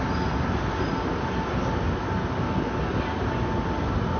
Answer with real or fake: real